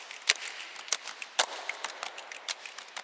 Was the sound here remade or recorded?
recorded